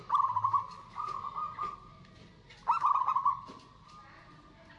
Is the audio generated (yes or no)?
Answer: no